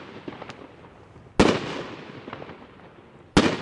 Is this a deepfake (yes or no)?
no